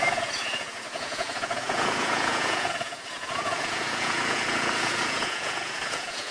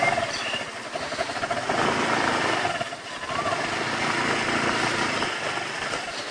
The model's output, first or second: first